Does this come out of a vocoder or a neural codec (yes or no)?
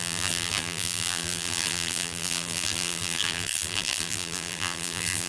yes